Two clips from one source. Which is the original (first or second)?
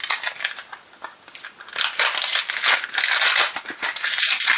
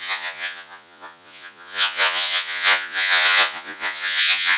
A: first